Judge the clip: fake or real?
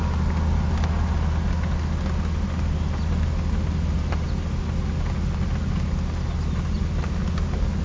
real